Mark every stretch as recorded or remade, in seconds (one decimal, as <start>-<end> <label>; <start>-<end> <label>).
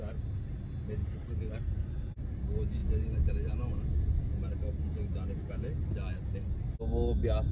0.0-7.5 recorded